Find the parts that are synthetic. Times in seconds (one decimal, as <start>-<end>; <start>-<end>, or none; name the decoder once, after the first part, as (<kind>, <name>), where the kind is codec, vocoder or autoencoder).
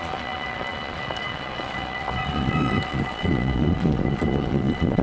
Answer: 0.0-5.0 (vocoder, Vocos)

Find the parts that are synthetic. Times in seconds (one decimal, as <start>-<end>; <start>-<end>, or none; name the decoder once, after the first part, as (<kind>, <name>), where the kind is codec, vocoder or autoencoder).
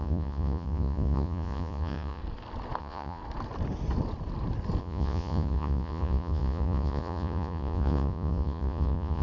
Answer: 0.0-2.2 (vocoder, Vocos); 2.8-3.2; 4.8-9.2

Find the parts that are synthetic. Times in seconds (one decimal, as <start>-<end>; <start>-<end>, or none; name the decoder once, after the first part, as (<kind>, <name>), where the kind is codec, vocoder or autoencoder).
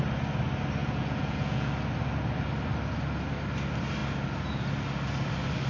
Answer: 0.8-1.7 (vocoder, Vocos)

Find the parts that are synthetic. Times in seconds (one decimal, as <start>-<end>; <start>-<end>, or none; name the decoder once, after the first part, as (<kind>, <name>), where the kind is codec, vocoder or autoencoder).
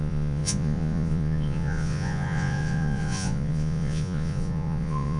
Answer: 0.0-5.2 (vocoder, Vocos)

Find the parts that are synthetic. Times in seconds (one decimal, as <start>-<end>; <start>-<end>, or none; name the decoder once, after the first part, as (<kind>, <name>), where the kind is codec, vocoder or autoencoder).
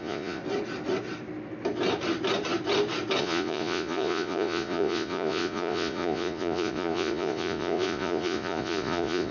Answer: 0.0-0.4 (vocoder, Vocos); 3.2-9.3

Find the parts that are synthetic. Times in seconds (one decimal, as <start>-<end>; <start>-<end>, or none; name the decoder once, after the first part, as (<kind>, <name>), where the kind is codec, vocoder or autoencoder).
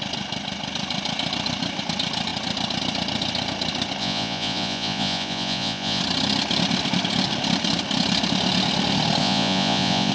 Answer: 4.0-6.0 (vocoder, Vocos); 9.2-10.1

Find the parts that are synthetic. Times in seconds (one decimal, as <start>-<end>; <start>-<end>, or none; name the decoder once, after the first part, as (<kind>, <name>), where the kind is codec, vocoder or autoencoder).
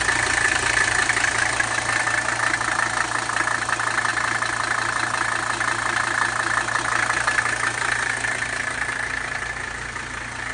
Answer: none